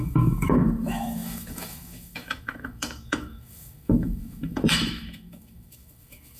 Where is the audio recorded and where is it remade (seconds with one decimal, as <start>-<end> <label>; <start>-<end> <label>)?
0.0-6.4 remade